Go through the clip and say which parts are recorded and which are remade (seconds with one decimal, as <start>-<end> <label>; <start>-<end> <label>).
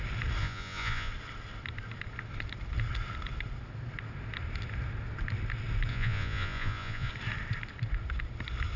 0.0-0.4 recorded; 0.4-1.1 remade; 1.1-5.9 recorded; 5.9-7.1 remade; 7.1-8.8 recorded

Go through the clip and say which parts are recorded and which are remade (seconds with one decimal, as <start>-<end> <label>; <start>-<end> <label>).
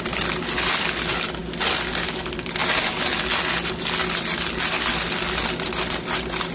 0.0-6.5 recorded